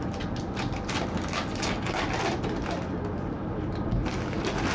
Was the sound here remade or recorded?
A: recorded